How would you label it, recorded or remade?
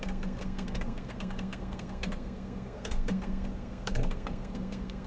remade